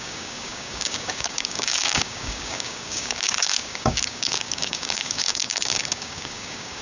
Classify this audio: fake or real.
fake